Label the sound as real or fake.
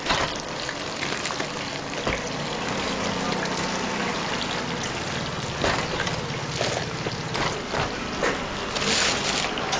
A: real